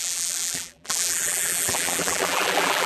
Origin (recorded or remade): remade